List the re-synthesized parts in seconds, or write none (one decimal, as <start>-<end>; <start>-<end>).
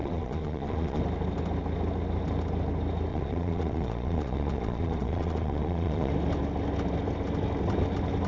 0.0-1.0; 3.1-6.1